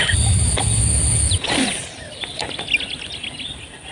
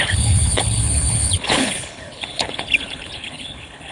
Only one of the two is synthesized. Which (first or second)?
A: second